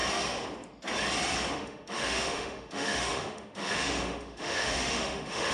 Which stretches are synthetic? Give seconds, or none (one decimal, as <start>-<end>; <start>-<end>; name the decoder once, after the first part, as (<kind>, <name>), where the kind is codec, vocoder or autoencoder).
1.5-5.5 (autoencoder, DAC-VAE)